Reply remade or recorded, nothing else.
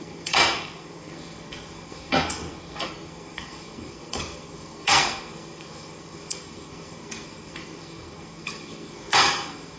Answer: remade